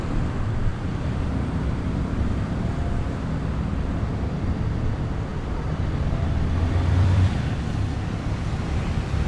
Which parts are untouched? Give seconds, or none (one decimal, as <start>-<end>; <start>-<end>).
0.0-0.7; 1.9-5.3; 7.9-9.3